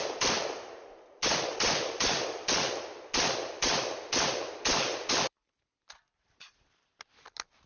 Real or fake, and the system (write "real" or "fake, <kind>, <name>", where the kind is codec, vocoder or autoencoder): real